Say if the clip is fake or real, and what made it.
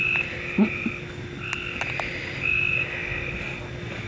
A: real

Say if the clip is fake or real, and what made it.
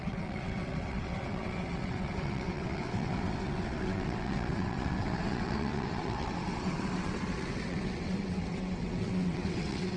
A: fake, vocoder, WaveNeXt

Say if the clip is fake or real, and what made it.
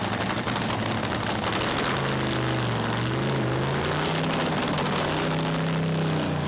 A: real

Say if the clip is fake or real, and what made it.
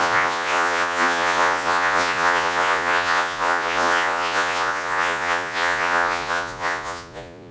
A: fake, vocoder, Vocos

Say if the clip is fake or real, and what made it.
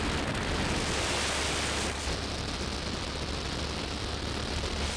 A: real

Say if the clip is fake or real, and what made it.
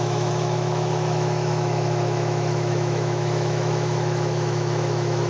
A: fake, autoencoder, DAC-VAE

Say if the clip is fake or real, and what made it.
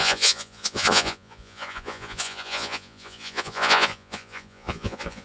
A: fake, vocoder, Vocos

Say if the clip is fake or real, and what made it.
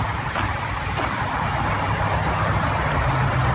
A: real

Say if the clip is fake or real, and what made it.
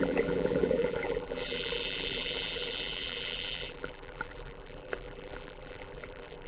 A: fake, vocoder, BigVGAN v2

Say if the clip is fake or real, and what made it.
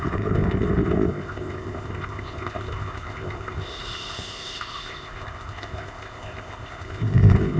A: fake, codec, ZipCodec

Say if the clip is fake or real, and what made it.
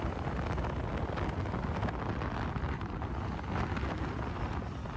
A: real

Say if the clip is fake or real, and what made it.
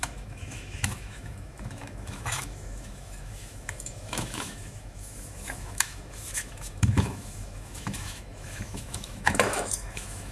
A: fake, autoencoder, DAC-VAE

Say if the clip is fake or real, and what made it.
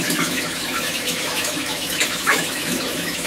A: fake, autoencoder, DAC-VAE